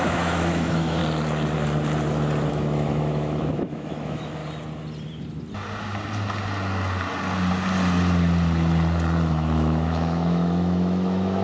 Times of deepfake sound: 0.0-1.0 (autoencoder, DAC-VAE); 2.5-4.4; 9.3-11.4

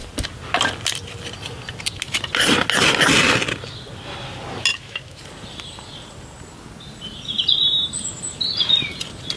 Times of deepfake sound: 4.7-5.2 (autoencoder, DAC-VAE)

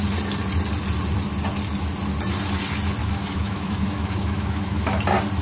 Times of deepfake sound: 3.0-5.0 (autoencoder, DAC-VAE)

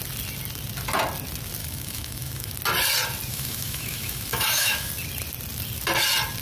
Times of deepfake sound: 1.6-2.5 (autoencoder, DAC-VAE); 3.3-4.9

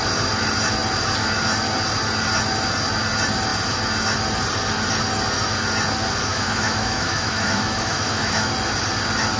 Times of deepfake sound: 6.3-8.5 (autoencoder, DAC-VAE)

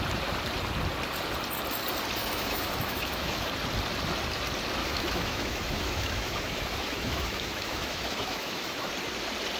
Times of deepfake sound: 2.2-3.5 (autoencoder, DAC-VAE); 4.8-8.9